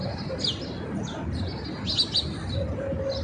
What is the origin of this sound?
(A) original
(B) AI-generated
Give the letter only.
A